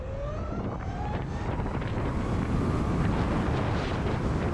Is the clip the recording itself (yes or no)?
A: yes